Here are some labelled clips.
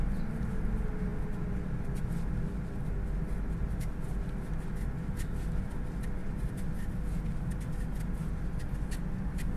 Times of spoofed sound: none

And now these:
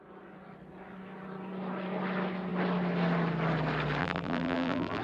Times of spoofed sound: 4.0-5.0 (vocoder, BigVGAN v2)

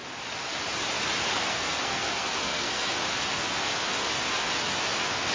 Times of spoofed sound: 1.4-2.9 (codec, SNAC)

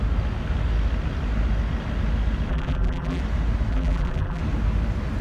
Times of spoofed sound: 2.5-3.2 (vocoder, BigVGAN v2); 3.7-4.4

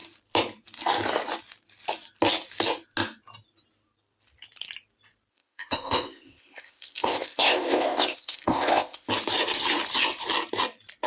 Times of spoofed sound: 5.3-9.1 (codec, ZipCodec)

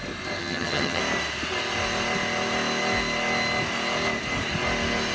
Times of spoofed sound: 0.4-1.0 (vocoder, HiFi-GAN)

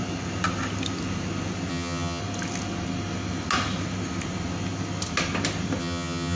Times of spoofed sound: 1.7-2.2 (vocoder, HiFi-GAN); 5.8-6.4